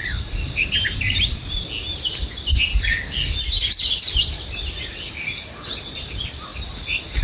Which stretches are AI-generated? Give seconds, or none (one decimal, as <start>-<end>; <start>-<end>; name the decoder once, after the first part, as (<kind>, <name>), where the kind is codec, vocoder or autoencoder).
0.0-1.4 (vocoder, BigVGAN v2); 5.7-6.5